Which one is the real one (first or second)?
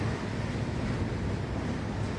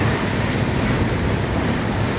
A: first